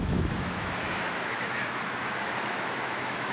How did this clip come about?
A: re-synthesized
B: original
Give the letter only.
A